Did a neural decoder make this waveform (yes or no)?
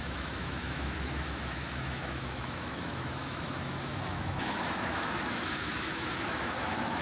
yes